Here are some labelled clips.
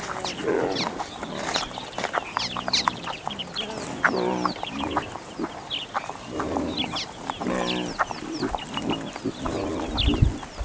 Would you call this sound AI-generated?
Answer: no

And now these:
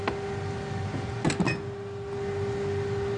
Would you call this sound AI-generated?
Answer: no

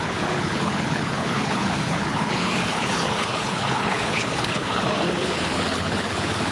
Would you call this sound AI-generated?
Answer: yes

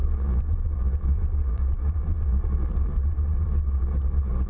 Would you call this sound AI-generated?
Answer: yes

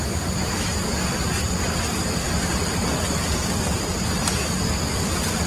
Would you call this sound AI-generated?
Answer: no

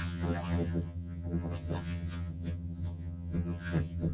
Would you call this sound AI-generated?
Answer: yes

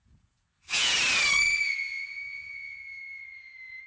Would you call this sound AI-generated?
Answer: yes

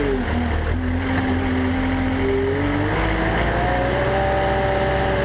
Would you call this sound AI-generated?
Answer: no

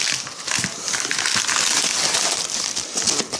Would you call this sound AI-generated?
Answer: no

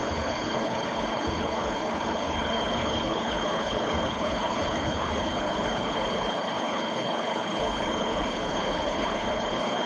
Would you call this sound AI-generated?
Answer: yes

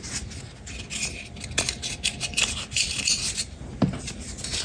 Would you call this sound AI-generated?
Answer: no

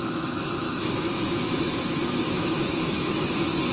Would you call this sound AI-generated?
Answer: yes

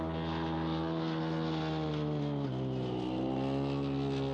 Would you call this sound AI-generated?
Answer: no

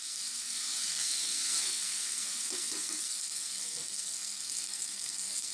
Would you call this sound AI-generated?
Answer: yes